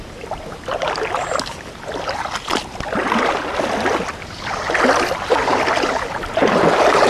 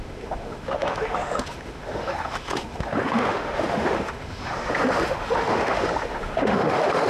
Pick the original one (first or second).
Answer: first